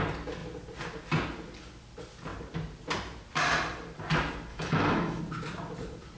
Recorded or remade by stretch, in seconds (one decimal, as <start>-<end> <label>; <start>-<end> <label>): 0.0-4.5 recorded; 4.5-5.2 remade; 5.2-6.2 recorded